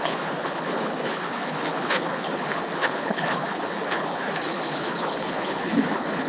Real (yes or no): no